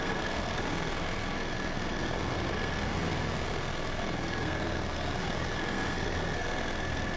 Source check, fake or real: fake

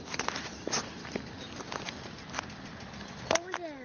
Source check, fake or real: real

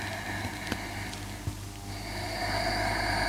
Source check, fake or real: real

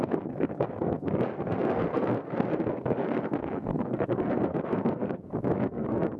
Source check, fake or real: fake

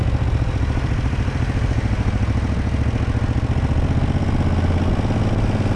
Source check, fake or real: real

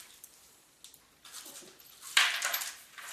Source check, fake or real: real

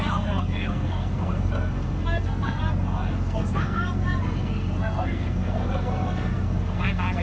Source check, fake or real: fake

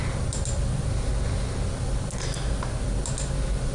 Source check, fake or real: real